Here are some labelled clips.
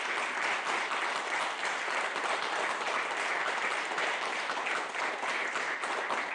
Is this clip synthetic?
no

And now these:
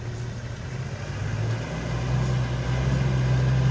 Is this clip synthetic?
no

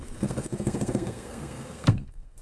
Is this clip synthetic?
yes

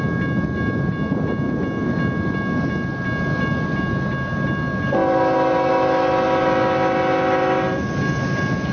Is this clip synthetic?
no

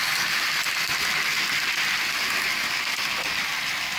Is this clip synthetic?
no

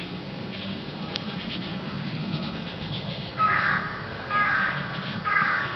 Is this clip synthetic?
yes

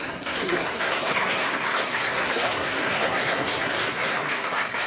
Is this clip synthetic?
yes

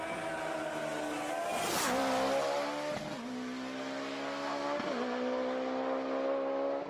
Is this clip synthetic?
no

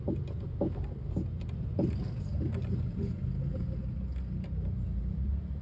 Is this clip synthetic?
no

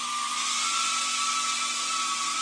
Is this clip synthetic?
no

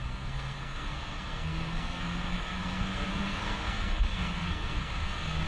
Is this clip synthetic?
yes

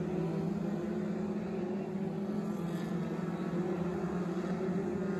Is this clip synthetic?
no